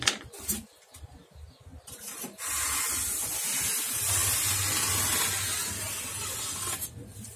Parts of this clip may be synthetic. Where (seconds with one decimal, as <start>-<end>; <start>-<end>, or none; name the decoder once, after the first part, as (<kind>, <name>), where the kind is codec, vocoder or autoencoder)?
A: 1.7-2.8 (vocoder, BigVGAN v2)

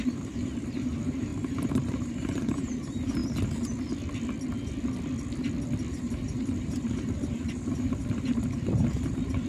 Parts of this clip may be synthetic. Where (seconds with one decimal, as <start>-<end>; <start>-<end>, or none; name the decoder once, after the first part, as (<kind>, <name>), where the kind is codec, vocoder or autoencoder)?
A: 0.0-3.2 (vocoder, BigVGAN v2); 5.9-9.5